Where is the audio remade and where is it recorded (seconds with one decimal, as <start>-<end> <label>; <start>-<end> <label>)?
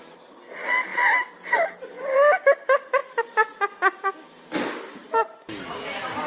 0.0-6.3 recorded